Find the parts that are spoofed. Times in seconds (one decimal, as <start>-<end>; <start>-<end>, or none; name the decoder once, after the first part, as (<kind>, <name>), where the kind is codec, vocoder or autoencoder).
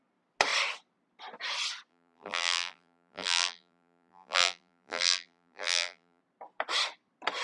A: 1.9-6.2 (vocoder, BigVGAN v2)